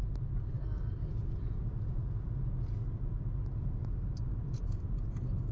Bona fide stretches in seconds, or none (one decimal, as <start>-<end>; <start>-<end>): 0.0-1.0; 2.0-5.5